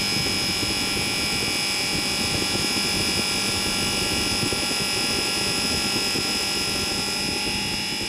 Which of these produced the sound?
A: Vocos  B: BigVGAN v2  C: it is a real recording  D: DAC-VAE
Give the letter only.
C